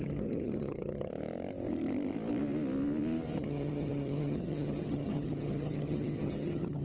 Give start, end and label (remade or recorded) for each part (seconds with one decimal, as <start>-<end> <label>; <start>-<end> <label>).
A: 0.0-1.1 remade; 1.1-3.4 recorded; 3.4-6.8 remade